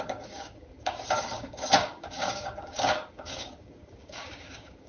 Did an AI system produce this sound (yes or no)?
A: yes